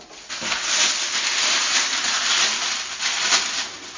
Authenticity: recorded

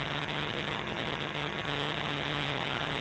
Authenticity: remade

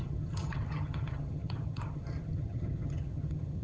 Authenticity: remade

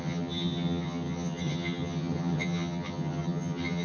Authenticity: remade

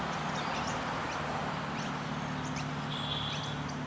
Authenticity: recorded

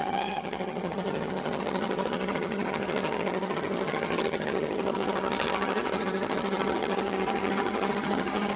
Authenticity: remade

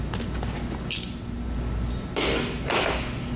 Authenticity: recorded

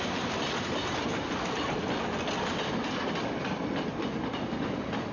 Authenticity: recorded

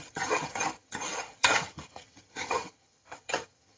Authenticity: remade